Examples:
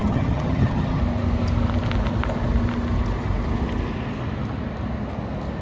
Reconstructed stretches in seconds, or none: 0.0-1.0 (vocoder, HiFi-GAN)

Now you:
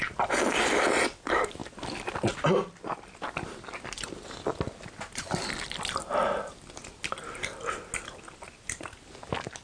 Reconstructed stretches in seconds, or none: none

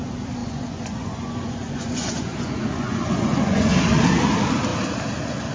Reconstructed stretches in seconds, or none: 0.4-3.7 (vocoder, Vocos)